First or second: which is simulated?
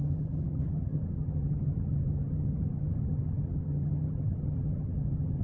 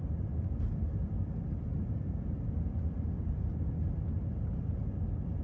first